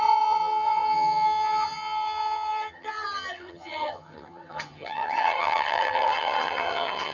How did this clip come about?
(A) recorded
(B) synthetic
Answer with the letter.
B